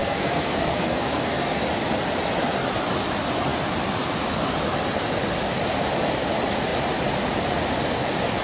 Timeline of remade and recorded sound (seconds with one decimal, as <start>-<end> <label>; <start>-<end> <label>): 0.0-1.6 remade; 1.6-8.4 recorded